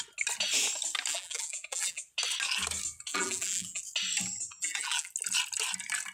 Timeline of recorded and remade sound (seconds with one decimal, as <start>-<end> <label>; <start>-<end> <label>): 0.0-1.1 recorded; 1.1-2.0 remade; 2.0-3.1 recorded; 3.1-3.8 remade; 3.8-4.5 recorded; 4.5-5.1 remade; 5.1-6.1 recorded